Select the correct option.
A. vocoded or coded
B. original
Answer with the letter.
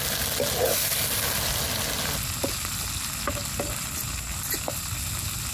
B